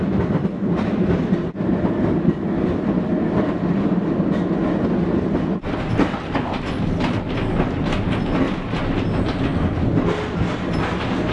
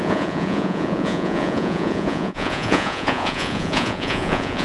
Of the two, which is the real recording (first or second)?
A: first